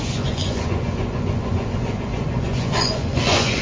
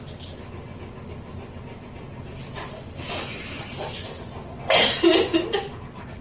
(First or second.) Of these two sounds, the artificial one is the first